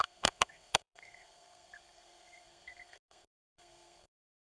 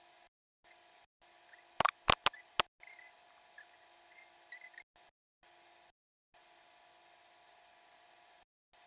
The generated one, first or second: first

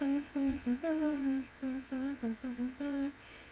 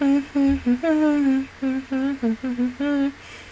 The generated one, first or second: first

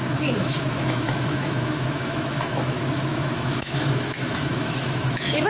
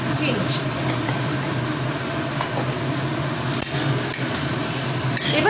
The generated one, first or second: first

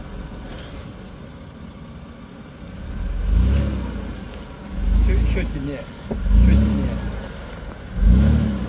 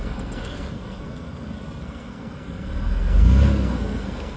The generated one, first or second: second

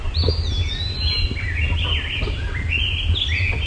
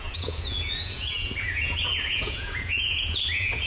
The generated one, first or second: second